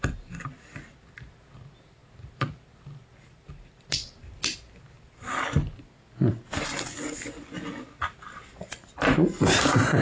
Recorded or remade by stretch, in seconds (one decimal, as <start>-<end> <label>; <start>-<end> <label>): 0.0-10.0 recorded